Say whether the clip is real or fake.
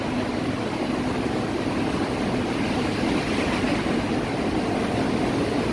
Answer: real